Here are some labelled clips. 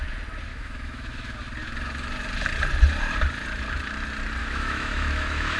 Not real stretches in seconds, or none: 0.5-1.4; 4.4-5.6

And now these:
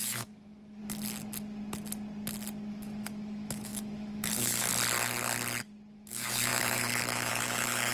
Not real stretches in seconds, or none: 0.0-0.8; 2.7-4.7; 5.9-7.9